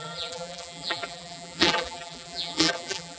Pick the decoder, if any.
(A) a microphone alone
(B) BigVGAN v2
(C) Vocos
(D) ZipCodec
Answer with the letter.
B